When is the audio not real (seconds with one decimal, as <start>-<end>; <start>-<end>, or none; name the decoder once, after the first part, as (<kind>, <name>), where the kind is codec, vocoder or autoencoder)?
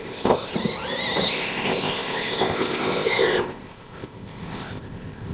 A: 0.0-0.5 (codec, ZipCodec); 1.3-5.3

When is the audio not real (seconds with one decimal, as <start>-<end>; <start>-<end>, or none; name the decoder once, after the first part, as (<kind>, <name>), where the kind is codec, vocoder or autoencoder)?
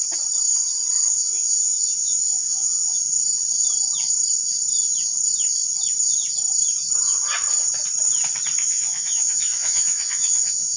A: 1.1-3.0 (vocoder, Vocos); 8.6-10.8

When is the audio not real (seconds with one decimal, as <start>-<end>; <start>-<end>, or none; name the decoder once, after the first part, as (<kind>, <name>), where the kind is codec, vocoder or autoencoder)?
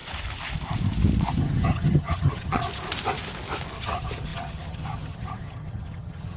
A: 1.3-2.7 (vocoder, HiFi-GAN); 3.8-6.4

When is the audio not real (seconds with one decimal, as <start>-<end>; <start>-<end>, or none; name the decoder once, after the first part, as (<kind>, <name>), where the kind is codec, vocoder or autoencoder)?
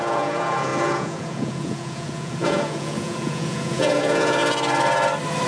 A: 0.0-4.4 (vocoder, Vocos)